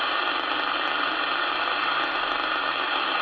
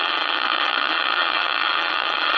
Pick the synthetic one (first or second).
second